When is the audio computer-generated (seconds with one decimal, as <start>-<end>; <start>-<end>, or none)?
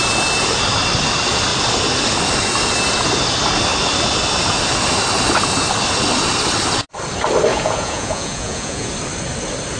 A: 7.5-8.9